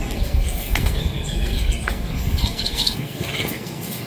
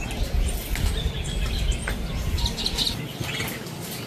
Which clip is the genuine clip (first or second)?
second